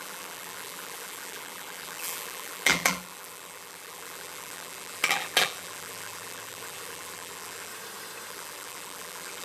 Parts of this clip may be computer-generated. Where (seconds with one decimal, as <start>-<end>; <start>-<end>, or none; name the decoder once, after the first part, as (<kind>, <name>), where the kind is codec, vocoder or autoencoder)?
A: 0.0-7.7 (vocoder, BigVGAN v2); 8.3-9.4